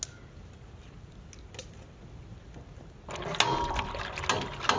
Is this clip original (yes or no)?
yes